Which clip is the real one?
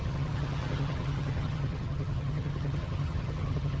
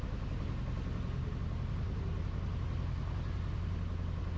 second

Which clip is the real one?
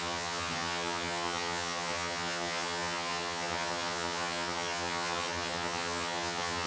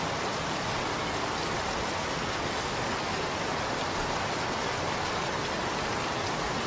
second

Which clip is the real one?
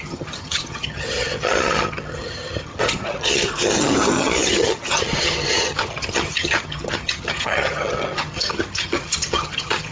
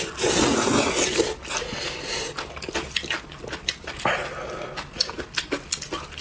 second